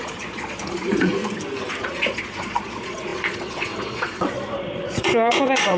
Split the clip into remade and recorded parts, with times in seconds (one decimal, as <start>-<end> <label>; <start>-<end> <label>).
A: 0.0-1.2 remade; 1.2-1.8 recorded; 1.8-5.8 remade